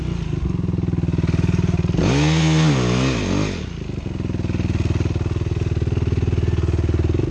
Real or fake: real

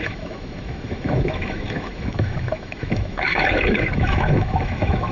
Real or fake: fake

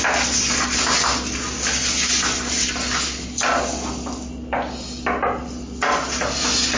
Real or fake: real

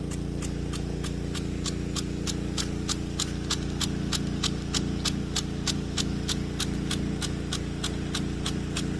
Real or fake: real